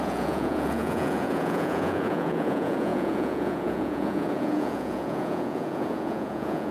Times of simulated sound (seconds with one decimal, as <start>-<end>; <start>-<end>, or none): 0.0-6.7